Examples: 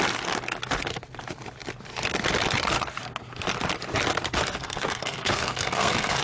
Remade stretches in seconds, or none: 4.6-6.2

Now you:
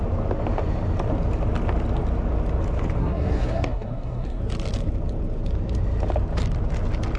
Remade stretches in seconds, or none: 3.0-4.4

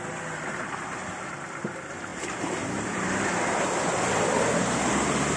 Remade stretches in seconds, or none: none

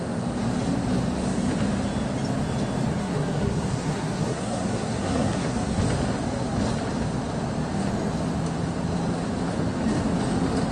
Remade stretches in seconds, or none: 3.0-5.8

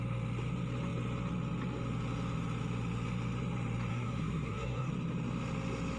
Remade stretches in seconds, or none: 3.9-4.9